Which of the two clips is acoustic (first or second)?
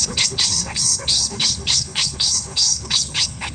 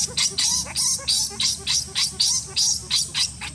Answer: second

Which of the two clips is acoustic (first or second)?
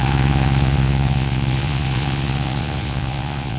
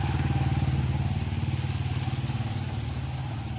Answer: second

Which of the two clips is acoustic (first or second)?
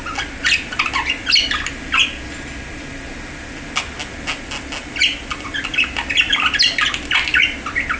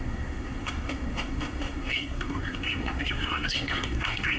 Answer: first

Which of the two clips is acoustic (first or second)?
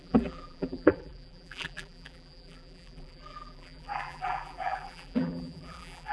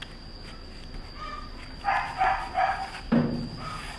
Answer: second